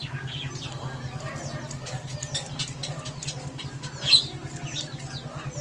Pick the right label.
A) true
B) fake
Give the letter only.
A